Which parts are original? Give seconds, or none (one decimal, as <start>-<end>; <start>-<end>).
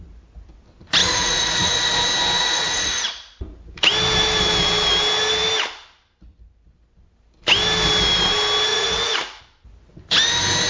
0.0-1.0; 1.9-2.4; 3.4-8.7; 9.4-10.7